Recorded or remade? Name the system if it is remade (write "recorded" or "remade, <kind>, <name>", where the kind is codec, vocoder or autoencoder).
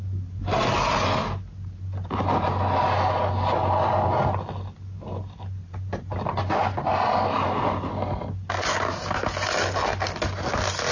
recorded